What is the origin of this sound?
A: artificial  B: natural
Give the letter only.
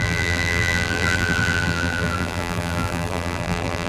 A